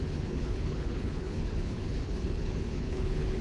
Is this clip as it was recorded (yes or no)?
no